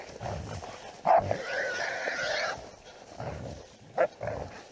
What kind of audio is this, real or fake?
real